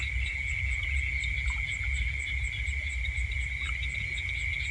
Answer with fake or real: real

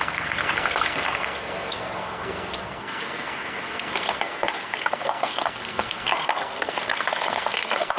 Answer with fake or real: fake